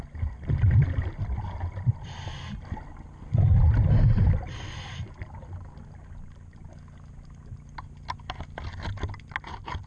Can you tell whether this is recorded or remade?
recorded